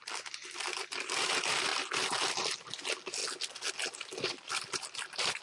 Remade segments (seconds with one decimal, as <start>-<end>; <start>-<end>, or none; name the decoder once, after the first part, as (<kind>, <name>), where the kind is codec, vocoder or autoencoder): 0.0-1.7 (vocoder, BigVGAN v2); 2.3-3.2; 3.7-5.4